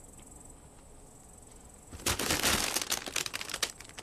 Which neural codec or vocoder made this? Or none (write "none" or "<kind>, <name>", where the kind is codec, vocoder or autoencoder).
none